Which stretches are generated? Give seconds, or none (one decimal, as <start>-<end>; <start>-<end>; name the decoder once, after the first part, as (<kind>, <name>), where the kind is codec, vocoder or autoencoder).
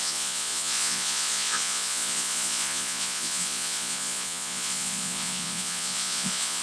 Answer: 0.0-6.6 (vocoder, Vocos)